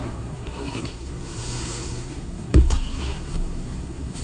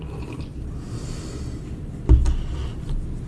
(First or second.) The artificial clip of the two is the first